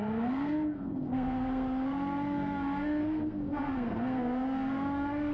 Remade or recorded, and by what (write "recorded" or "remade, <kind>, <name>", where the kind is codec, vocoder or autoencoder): remade, codec, SNAC